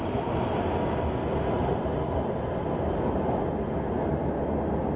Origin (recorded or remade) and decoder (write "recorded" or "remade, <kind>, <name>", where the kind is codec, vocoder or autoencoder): recorded